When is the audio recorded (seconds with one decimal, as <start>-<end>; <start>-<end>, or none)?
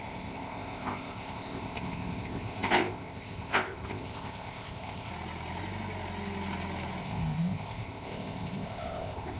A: 5.1-7.0